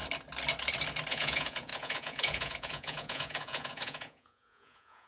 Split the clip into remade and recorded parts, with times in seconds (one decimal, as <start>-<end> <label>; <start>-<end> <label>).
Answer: 0.0-1.1 recorded; 1.1-5.1 remade